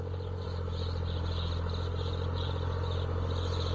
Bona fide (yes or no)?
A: yes